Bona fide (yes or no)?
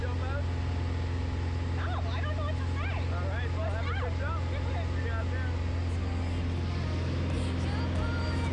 yes